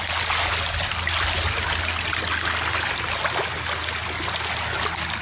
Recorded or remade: recorded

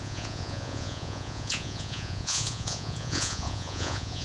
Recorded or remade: remade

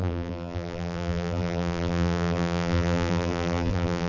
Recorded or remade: remade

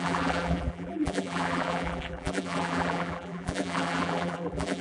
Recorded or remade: remade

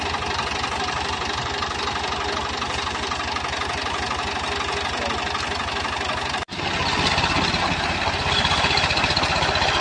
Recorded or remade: recorded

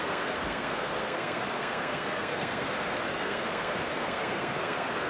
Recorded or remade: remade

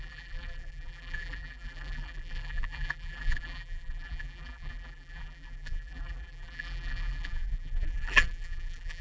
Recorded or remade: remade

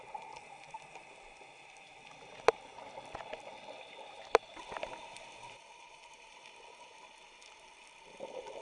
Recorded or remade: recorded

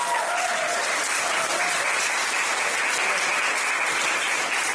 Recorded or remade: recorded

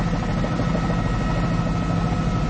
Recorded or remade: recorded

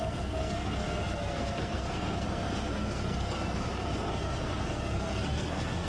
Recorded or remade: remade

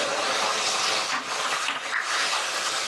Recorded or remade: recorded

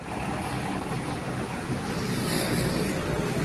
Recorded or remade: recorded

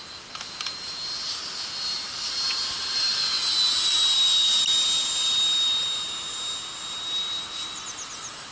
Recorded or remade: recorded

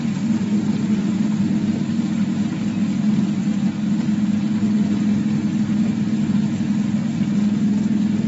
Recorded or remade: recorded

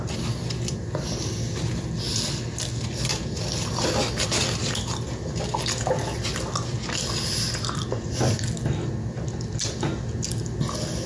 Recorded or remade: recorded